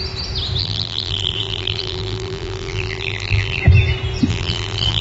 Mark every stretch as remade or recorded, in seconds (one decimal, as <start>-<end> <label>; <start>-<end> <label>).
0.0-0.6 recorded; 0.6-3.6 remade; 3.6-4.3 recorded; 4.3-5.0 remade

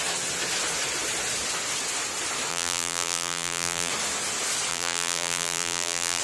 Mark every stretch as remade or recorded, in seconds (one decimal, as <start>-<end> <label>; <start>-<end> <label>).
0.0-2.5 recorded; 2.5-3.9 remade; 3.9-4.7 recorded; 4.7-6.2 remade

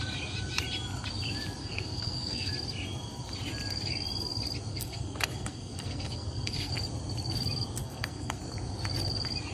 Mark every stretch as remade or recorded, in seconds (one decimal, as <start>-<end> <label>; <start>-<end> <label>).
0.0-1.6 recorded; 1.6-2.5 remade; 2.5-4.7 recorded; 4.7-6.7 remade; 6.7-7.8 recorded; 7.8-8.4 remade; 8.4-9.5 recorded

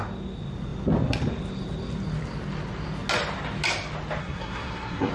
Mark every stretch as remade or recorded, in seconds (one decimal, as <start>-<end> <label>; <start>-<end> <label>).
0.0-4.2 recorded; 4.2-5.1 remade

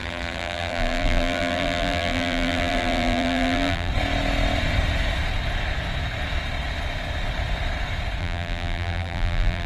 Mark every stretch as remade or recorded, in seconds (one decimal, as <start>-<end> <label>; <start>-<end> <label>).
0.0-3.9 remade; 3.9-8.2 recorded; 8.2-9.7 remade

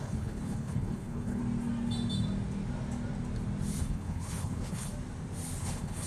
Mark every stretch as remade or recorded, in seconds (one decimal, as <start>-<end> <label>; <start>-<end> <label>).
0.0-1.4 remade; 1.4-3.8 recorded; 3.8-4.9 remade; 4.9-5.6 recorded; 5.6-6.1 remade

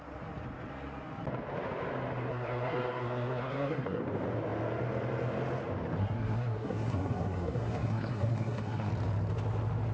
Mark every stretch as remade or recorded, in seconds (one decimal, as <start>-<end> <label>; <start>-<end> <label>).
0.0-2.3 recorded; 2.3-4.0 remade; 4.0-6.0 recorded; 6.0-8.9 remade; 8.9-9.9 recorded

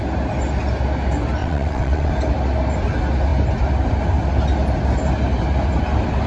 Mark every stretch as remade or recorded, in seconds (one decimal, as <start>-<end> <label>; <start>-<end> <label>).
0.0-1.4 recorded; 1.4-2.1 remade; 2.1-6.3 recorded